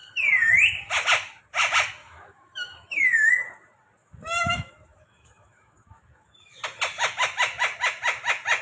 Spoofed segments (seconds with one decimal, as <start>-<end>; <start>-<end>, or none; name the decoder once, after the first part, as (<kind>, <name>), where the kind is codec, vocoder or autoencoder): 2.0-3.3 (autoencoder, DAC-VAE); 4.0-6.6